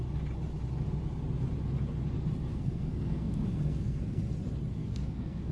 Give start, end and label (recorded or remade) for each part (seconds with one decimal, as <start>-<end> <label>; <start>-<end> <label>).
0.0-2.5 recorded; 2.5-4.2 remade; 4.2-4.8 recorded; 4.8-5.5 remade